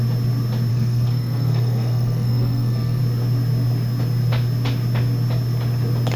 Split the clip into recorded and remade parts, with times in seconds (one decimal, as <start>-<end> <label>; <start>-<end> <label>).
0.0-0.7 recorded; 0.7-3.0 remade; 3.0-6.2 recorded